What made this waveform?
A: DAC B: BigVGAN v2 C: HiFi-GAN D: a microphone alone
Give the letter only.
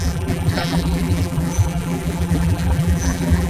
B